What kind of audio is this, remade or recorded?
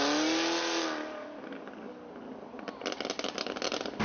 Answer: recorded